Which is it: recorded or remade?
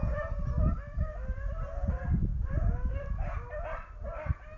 recorded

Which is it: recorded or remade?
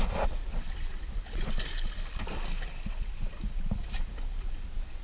recorded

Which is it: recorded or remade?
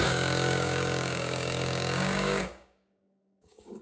remade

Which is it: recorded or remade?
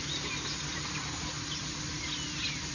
recorded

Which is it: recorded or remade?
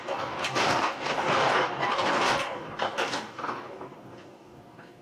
remade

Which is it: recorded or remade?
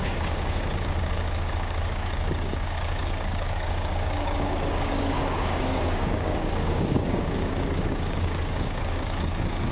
remade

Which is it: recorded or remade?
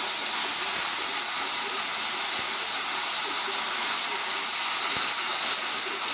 recorded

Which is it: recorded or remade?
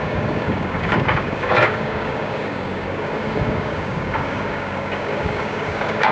remade